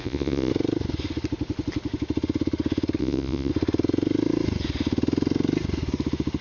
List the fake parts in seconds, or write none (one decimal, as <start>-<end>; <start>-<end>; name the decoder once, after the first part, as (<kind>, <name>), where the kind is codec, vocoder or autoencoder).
0.0-0.5 (vocoder, Vocos); 3.0-3.5